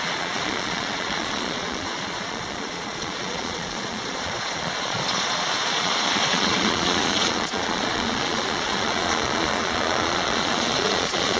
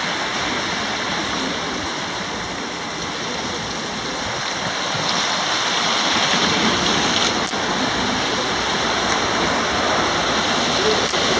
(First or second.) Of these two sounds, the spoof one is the first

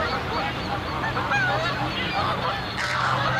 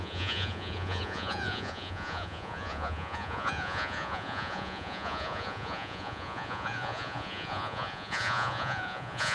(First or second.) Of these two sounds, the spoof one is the second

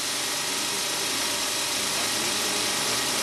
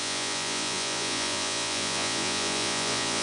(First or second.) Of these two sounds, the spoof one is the second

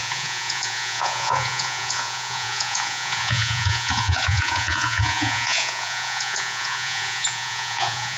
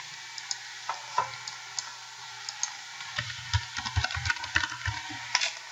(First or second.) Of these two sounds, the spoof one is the first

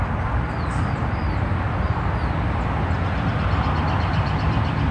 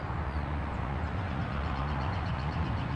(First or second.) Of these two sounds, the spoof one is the second